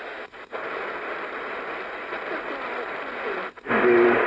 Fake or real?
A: real